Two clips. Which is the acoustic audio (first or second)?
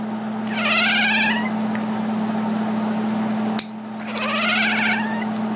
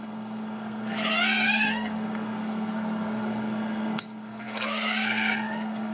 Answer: first